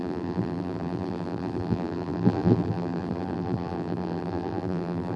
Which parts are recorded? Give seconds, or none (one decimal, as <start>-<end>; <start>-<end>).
none